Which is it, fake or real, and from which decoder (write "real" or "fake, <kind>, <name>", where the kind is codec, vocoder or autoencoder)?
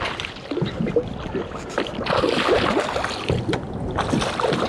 real